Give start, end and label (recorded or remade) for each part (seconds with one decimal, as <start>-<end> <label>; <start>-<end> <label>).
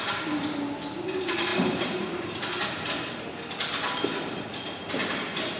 0.0-5.6 recorded